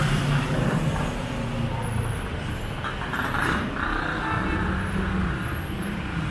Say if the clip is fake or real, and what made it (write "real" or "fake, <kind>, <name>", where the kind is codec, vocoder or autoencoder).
real